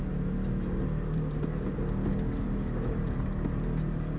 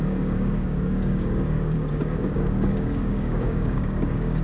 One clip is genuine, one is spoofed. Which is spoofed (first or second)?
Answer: second